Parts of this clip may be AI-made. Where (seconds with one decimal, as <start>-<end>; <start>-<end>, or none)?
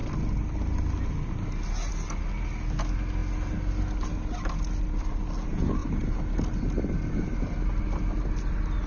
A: none